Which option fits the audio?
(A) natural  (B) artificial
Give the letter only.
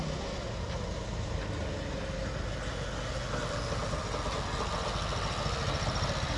A